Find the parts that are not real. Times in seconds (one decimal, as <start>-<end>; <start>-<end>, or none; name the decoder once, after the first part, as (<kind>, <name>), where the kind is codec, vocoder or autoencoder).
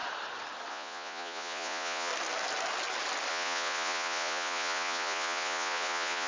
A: 0.7-2.1 (vocoder, Vocos); 3.3-6.3